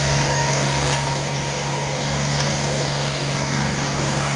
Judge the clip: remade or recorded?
remade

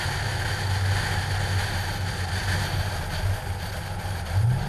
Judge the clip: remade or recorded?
recorded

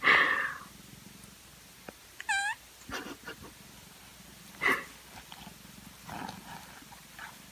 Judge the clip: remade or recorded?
recorded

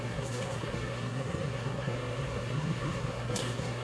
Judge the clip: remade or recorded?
remade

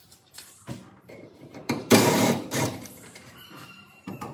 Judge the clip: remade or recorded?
remade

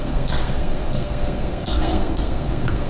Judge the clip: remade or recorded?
remade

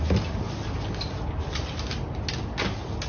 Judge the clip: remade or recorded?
recorded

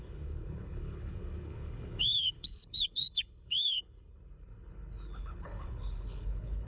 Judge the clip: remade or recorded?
remade